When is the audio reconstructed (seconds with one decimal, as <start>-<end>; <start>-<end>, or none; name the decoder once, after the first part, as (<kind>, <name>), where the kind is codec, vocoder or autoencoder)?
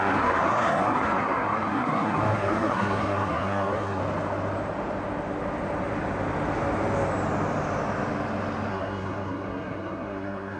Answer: 0.0-4.0 (codec, SNAC); 8.7-10.6